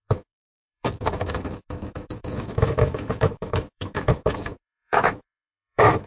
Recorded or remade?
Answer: remade